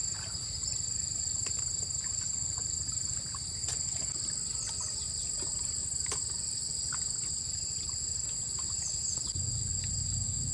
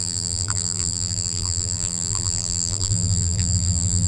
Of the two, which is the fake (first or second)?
second